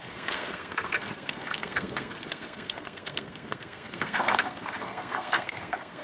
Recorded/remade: remade